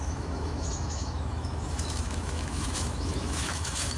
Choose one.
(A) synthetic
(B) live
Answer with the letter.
A